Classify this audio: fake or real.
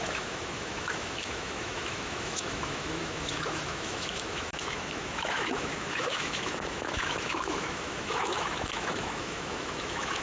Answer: fake